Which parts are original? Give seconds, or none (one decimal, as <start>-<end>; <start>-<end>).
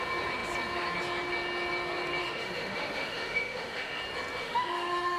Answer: 0.0-2.2; 4.0-4.4